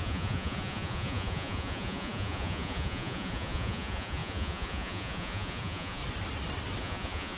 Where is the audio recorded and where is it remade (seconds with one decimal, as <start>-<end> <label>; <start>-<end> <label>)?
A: 0.0-6.0 remade; 6.0-6.8 recorded; 6.8-7.4 remade